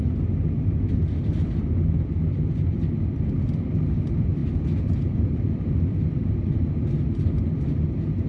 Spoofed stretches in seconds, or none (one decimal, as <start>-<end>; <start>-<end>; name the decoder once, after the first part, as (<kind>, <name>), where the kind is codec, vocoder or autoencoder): none